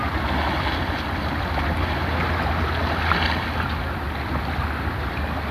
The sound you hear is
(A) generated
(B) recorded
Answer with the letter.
B